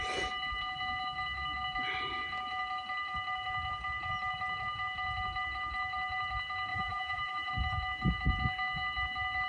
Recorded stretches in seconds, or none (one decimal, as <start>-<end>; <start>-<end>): 0.0-6.7; 7.5-9.5